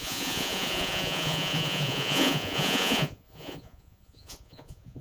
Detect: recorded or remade remade